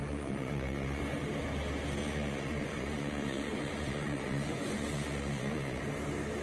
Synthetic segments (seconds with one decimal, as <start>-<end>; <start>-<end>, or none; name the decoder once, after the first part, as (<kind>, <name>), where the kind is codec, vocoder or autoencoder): 0.0-1.0 (vocoder, Vocos); 2.0-5.8